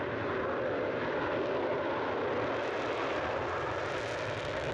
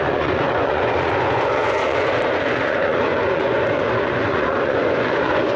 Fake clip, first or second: second